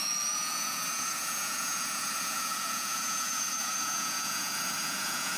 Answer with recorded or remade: remade